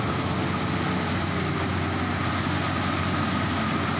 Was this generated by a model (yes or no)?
no